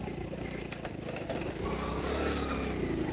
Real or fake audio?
real